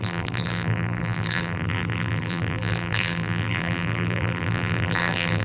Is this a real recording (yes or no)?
no